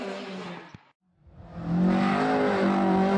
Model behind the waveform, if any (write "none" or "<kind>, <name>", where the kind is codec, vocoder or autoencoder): none